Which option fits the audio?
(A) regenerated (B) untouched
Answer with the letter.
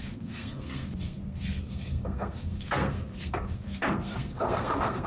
A